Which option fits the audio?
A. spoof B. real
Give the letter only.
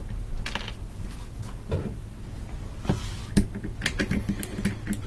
B